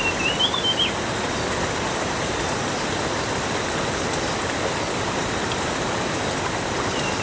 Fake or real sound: real